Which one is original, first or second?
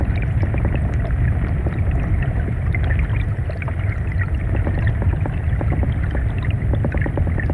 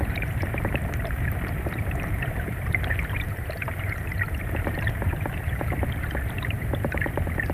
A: first